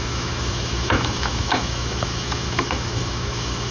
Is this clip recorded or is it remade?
remade